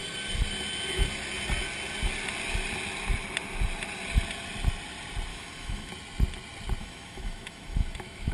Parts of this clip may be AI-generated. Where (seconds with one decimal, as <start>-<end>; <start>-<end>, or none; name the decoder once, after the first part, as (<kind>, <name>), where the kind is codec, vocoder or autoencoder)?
5.3-5.9 (autoencoder, DAC-VAE); 6.8-8.3